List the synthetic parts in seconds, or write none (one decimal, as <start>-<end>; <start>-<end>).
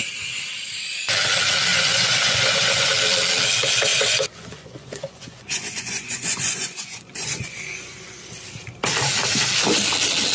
1.7-2.9; 3.9-8.2